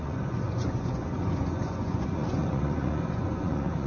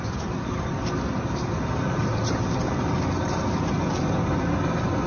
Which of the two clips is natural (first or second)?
second